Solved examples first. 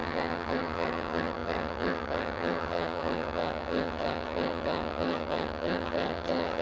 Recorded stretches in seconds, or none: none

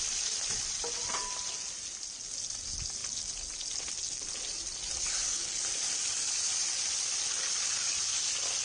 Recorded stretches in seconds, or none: 0.0-8.6

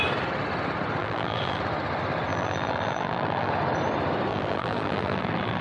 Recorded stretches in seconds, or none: 0.0-1.0; 1.6-2.3; 3.5-4.3